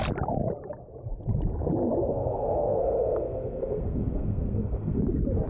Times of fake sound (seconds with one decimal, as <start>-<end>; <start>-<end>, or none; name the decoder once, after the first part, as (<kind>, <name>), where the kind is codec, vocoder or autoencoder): 2.1-5.0 (codec, SNAC)

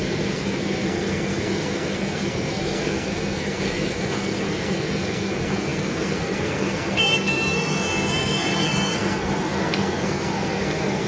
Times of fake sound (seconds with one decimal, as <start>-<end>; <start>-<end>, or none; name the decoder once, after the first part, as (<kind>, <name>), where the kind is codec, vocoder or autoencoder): 0.0-11.1 (codec, SNAC)

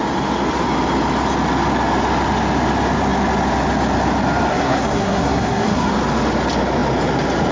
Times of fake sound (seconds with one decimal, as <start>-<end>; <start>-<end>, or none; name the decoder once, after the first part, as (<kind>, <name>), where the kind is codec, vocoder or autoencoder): 4.5-5.9 (codec, SNAC)